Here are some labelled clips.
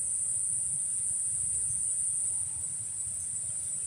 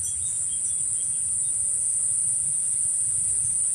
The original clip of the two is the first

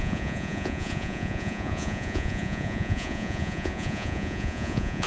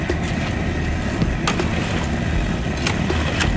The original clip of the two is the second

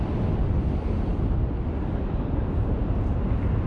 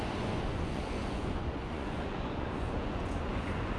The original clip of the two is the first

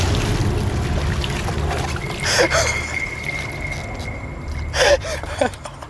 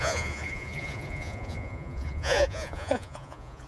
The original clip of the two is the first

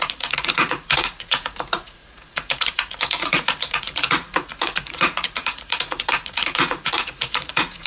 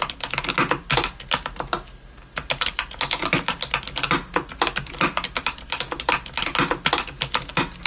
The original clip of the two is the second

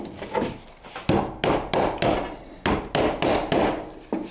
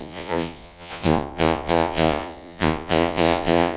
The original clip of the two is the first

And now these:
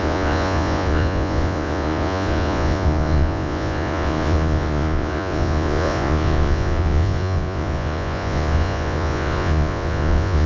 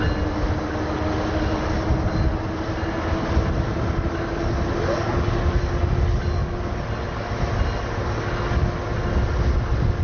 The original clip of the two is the second